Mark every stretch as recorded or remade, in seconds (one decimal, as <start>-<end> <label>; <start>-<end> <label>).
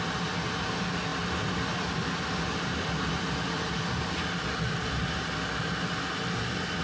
0.0-6.8 recorded